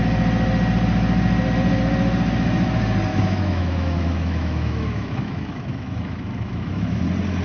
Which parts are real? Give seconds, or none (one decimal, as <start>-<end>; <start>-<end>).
0.0-3.1; 7.0-7.4